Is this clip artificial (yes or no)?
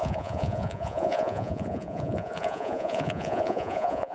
yes